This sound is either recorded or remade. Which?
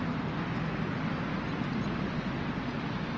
recorded